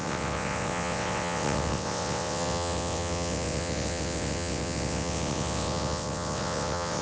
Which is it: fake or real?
fake